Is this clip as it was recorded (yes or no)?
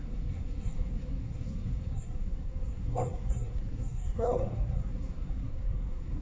no